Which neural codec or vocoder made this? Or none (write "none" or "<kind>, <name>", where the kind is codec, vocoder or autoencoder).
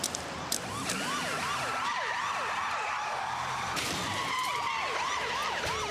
vocoder, BigVGAN v2